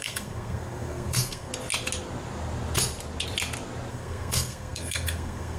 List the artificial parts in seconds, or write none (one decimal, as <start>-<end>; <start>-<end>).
0.0-1.5; 3.9-5.6

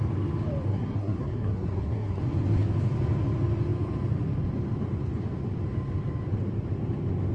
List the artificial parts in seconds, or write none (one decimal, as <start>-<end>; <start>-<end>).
0.7-2.2

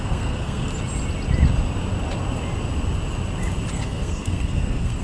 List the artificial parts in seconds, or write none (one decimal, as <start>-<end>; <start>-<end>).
0.0-0.7; 3.7-5.0

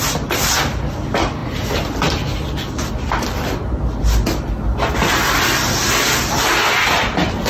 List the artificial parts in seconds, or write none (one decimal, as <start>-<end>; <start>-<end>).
none

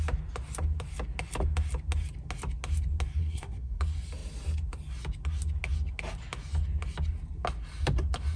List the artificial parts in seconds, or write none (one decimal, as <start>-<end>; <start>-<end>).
3.2-3.8

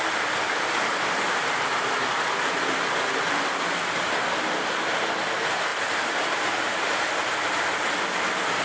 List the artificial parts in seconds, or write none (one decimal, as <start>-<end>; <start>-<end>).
none